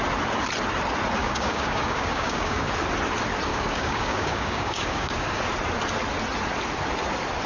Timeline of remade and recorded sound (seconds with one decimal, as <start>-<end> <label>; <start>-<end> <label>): 0.0-1.2 recorded; 1.2-2.7 remade; 2.7-3.5 recorded; 3.5-5.4 remade; 5.4-7.5 recorded